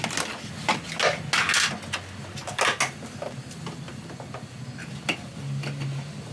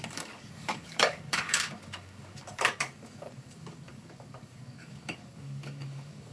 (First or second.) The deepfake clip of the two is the second